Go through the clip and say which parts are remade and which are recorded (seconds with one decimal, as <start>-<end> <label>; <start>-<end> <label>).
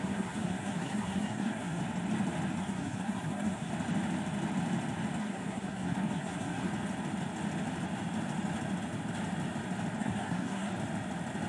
0.0-1.8 remade; 1.8-2.6 recorded; 2.6-3.7 remade; 3.7-5.2 recorded; 5.2-6.7 remade; 6.7-10.0 recorded; 10.0-10.7 remade; 10.7-11.5 recorded